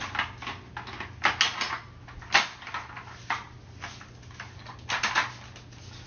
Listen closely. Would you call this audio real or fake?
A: real